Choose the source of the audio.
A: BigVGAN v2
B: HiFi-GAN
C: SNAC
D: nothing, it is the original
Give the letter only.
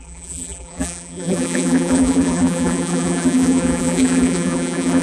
A